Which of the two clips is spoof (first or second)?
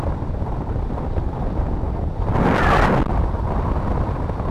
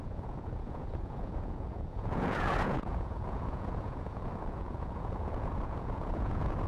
second